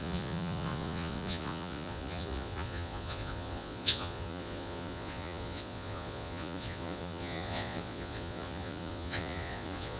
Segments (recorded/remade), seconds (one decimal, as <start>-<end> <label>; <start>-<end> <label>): 0.0-10.0 remade